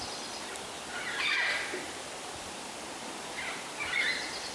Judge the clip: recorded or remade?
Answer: recorded